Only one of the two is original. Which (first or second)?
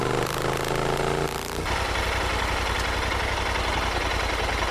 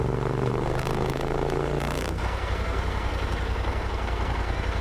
first